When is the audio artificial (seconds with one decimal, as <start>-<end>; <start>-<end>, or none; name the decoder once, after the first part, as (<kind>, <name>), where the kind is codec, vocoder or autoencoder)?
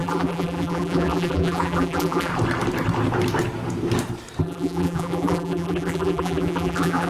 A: 0.0-2.3 (vocoder, BigVGAN v2); 4.4-7.1